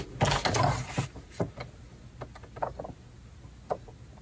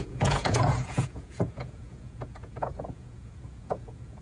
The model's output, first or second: second